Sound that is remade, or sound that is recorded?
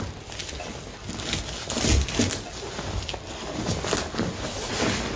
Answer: recorded